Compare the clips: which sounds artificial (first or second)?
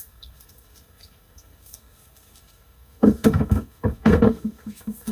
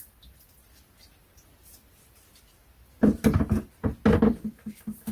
first